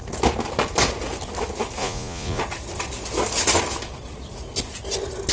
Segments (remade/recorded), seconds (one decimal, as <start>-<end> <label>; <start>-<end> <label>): 0.0-1.8 recorded; 1.8-2.4 remade; 2.4-5.3 recorded